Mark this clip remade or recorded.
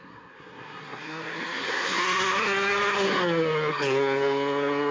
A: remade